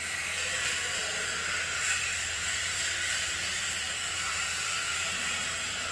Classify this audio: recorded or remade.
remade